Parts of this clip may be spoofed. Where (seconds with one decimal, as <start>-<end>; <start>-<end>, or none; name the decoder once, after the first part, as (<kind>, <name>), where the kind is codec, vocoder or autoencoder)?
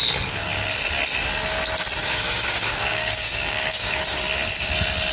2.0-4.0 (codec, DAC)